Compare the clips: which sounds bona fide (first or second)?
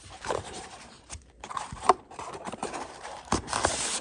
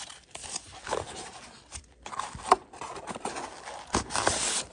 second